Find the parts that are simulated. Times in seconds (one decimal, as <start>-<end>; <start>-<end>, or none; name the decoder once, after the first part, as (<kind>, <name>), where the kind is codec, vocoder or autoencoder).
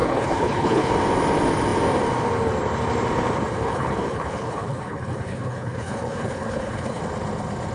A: 0.0-0.9 (codec, HILCodec); 3.6-7.0